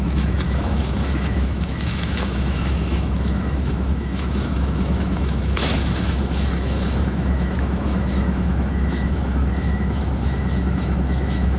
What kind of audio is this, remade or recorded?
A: remade